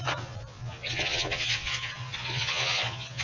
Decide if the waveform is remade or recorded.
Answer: remade